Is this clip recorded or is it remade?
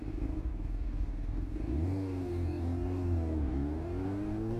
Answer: remade